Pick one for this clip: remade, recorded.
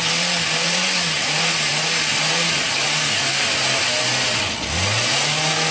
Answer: recorded